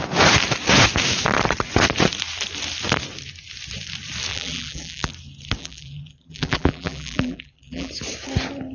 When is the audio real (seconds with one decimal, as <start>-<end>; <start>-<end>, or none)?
0.0-4.3; 5.1-5.6; 7.9-8.7

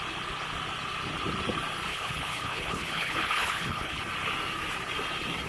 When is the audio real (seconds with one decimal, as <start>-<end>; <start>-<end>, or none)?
0.0-1.9; 4.0-5.5

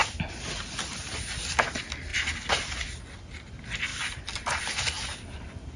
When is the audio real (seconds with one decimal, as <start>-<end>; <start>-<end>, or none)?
1.1-3.9

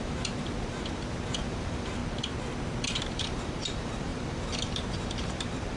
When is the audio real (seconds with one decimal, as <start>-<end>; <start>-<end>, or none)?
2.0-3.1

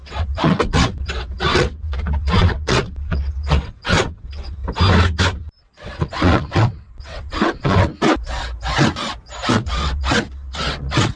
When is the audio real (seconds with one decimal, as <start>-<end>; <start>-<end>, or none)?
4.6-5.6; 7.9-9.5

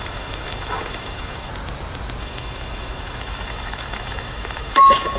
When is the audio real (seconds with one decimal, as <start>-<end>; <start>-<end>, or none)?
1.5-2.2